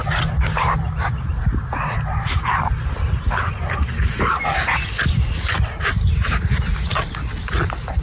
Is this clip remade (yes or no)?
no